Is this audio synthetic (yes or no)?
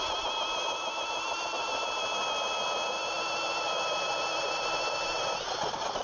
no